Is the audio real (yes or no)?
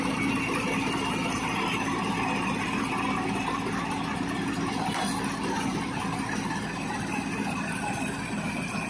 yes